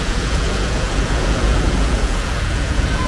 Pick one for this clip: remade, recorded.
remade